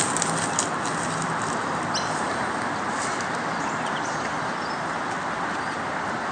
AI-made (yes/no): no